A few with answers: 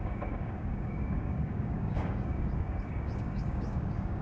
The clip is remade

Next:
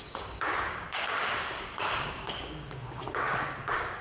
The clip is remade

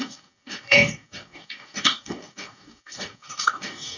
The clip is remade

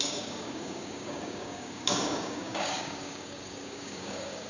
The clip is remade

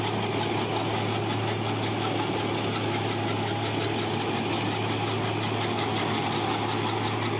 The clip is recorded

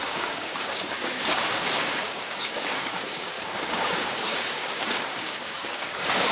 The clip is remade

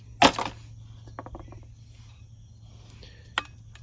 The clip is recorded